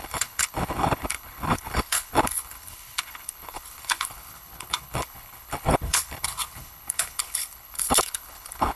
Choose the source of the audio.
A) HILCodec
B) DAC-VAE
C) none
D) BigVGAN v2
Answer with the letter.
A